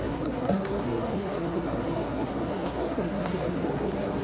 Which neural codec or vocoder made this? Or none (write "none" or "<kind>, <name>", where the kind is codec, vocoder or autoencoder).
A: codec, SNAC